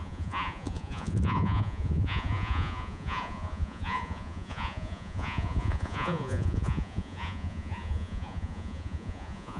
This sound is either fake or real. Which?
fake